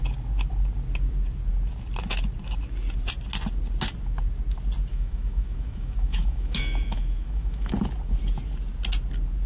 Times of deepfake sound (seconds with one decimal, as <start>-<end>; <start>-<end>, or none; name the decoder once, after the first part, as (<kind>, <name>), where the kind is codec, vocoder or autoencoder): 4.9-7.7 (autoencoder, DAC-VAE)

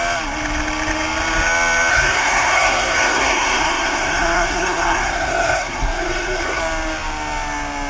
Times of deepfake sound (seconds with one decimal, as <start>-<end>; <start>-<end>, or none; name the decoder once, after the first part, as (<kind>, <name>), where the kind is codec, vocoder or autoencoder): 1.9-6.6 (codec, SNAC)

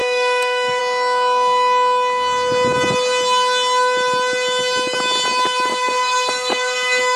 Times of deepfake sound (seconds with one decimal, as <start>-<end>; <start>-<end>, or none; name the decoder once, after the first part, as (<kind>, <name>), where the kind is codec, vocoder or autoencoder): 0.0-0.8 (codec, DAC); 5.7-7.2